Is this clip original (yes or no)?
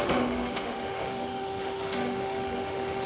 no